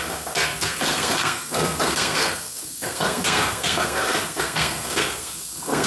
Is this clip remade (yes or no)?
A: yes